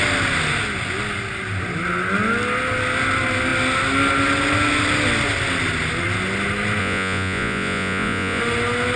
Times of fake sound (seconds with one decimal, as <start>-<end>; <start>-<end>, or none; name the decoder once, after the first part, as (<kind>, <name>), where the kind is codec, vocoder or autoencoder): 6.8-8.4 (vocoder, Vocos)